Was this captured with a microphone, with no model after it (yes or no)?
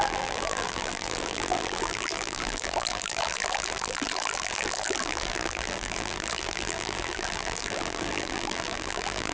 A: no